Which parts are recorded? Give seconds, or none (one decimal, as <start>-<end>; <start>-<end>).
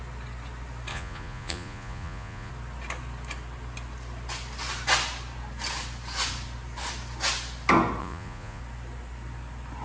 0.0-0.9; 2.5-8.0; 8.6-9.8